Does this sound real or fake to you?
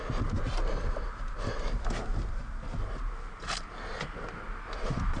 real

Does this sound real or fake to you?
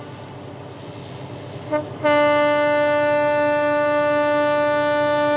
real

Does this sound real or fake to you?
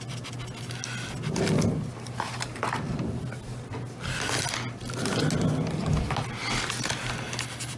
real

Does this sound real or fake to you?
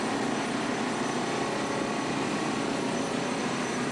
real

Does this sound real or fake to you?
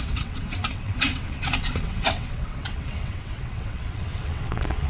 fake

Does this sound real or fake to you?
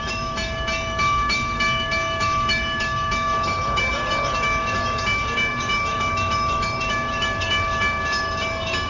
fake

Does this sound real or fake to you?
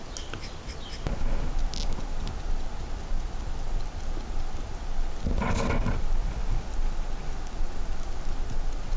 real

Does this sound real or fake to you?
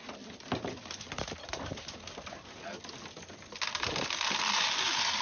real